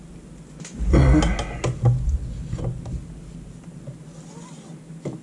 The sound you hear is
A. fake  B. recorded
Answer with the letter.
B